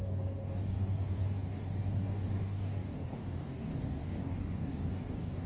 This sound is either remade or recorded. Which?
remade